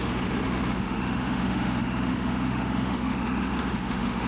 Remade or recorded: remade